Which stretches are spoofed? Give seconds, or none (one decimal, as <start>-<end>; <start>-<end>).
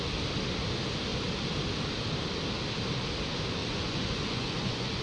3.6-5.0